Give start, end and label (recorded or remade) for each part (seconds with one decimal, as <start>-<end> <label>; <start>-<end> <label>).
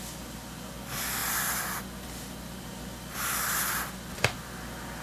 0.0-5.0 recorded